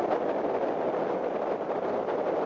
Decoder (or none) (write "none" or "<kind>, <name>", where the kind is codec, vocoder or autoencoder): none